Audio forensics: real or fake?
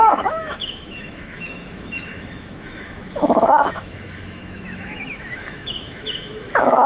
fake